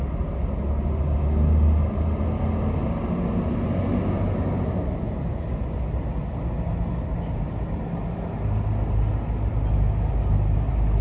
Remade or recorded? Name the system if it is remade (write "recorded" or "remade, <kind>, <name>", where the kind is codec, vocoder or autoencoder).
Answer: recorded